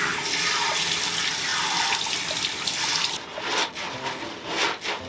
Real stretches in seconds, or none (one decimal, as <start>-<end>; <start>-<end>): 0.0-5.1